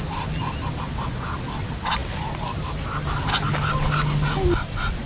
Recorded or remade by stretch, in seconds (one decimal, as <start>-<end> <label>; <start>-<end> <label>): 0.0-5.1 recorded